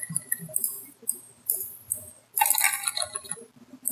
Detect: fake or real real